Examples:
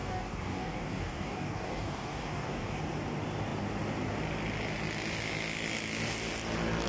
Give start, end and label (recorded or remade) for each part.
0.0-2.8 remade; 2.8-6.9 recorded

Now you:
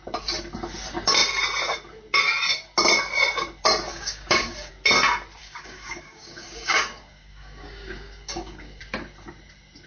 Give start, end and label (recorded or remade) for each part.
0.0-3.9 recorded; 3.9-4.7 remade; 4.7-5.4 recorded; 5.4-8.8 remade; 8.8-9.9 recorded